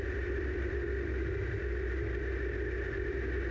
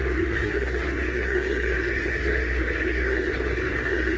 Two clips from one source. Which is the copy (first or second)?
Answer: second